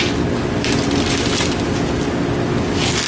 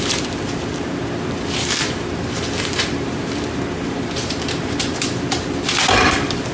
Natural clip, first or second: first